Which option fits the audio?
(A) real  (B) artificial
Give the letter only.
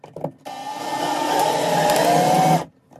A